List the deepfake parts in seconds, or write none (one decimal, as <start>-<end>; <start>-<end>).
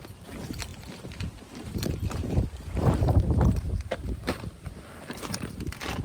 0.0-6.0